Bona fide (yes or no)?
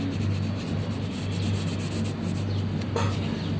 yes